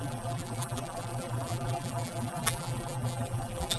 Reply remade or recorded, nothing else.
remade